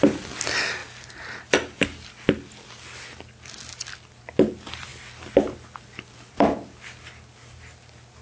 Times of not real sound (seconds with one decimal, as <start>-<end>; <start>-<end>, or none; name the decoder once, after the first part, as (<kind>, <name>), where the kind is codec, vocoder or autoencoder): none